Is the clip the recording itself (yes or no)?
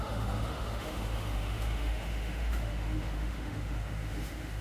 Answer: no